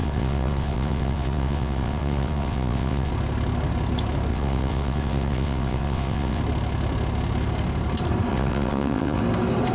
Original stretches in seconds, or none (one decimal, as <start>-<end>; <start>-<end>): 3.1-4.3; 6.4-8.3; 9.2-9.7